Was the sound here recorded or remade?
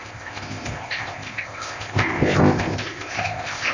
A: remade